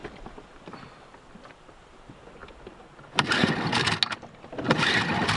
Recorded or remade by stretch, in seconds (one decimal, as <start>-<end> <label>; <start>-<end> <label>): 0.0-2.4 remade; 2.4-4.4 recorded; 4.4-5.4 remade